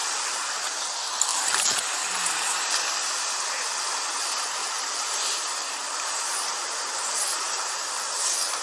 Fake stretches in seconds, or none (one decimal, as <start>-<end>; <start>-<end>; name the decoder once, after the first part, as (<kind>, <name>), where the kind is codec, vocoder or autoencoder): 0.0-0.5 (vocoder, BigVGAN v2); 1.3-2.3; 4.6-8.6

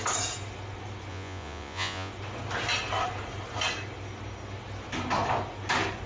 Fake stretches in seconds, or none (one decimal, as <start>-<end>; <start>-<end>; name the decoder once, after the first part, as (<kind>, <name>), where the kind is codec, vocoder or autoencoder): 1.1-2.1 (vocoder, Vocos)

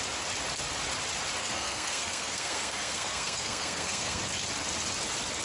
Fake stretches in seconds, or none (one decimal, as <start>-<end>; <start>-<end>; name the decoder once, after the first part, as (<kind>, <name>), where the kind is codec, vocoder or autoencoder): 1.4-4.2 (codec, SNAC)